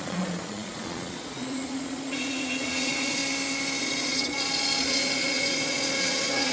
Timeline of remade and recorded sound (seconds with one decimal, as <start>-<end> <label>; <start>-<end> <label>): 0.0-3.2 remade; 3.2-3.8 recorded; 3.8-6.5 remade